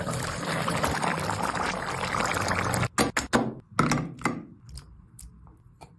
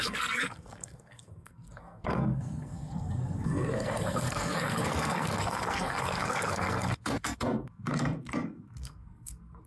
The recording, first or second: first